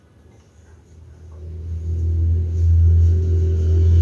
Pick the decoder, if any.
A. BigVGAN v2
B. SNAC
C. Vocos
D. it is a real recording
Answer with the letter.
D